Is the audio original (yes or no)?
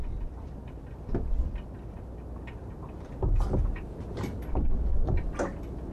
yes